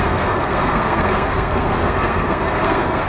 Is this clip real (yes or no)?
no